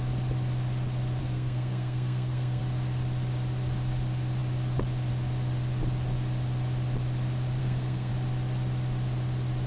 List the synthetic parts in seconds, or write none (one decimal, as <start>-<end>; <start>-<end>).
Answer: 1.2-2.6; 7.6-8.1